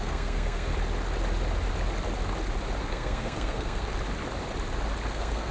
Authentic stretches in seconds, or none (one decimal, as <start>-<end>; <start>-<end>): 0.7-2.8; 3.9-5.1